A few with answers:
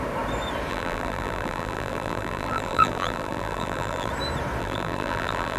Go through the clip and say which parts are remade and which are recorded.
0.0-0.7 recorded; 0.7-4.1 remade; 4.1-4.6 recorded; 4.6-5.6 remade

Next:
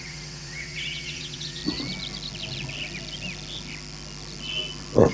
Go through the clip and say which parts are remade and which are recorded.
0.0-1.6 remade; 1.6-5.1 recorded

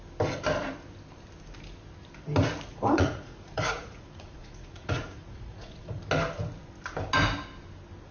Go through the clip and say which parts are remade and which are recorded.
0.0-2.7 recorded; 2.7-6.0 remade; 6.0-8.1 recorded